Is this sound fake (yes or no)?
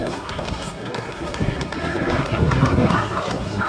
yes